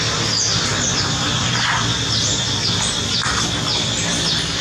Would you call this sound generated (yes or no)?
no